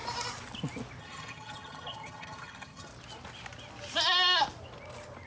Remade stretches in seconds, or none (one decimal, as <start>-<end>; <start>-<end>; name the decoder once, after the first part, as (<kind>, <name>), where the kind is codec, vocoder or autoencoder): 1.0-2.9 (vocoder, HiFi-GAN)